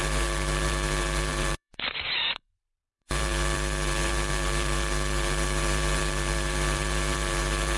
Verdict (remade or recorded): remade